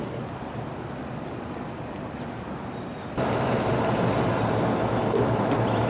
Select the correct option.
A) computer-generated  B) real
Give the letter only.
B